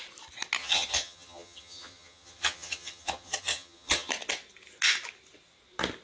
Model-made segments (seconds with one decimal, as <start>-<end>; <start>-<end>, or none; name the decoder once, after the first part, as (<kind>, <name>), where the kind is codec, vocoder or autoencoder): 0.6-4.1 (vocoder, HiFi-GAN)